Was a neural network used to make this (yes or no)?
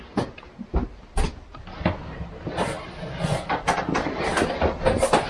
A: no